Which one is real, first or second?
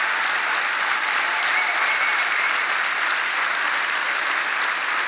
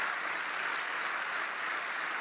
second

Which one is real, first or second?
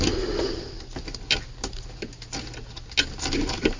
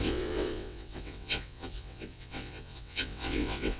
first